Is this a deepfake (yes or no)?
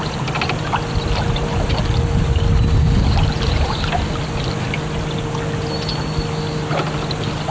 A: no